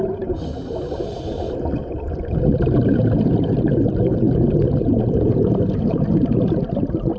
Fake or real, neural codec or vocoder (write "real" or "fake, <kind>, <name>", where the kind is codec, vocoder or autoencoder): real